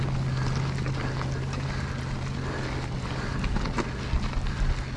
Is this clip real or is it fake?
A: real